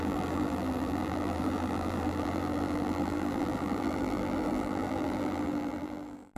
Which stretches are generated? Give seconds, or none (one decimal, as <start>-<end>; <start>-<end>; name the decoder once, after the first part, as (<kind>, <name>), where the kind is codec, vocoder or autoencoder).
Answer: 0.0-6.4 (vocoder, BigVGAN v2)